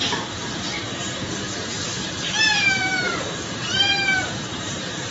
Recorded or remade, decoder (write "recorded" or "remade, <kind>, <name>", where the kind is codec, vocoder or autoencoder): remade, vocoder, BigVGAN v2